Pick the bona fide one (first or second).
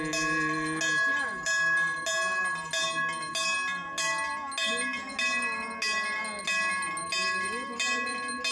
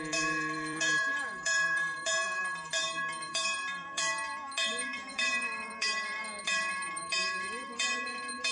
first